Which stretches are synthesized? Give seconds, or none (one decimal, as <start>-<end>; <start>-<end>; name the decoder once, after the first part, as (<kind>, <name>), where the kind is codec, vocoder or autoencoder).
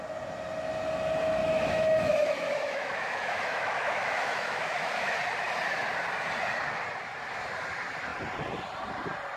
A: 1.4-5.2 (autoencoder, DAC-VAE)